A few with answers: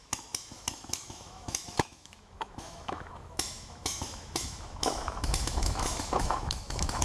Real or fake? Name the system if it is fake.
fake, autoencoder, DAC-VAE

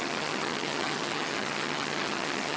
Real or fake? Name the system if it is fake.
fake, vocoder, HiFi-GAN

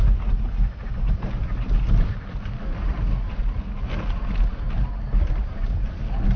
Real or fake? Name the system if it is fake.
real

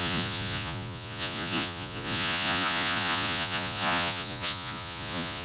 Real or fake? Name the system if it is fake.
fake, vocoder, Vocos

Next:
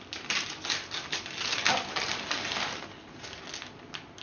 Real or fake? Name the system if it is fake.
real